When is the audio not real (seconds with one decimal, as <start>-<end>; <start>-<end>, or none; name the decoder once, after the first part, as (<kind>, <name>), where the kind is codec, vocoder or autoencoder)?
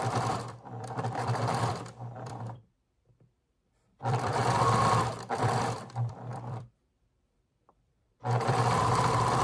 0.0-4.4 (vocoder, BigVGAN v2); 5.3-9.4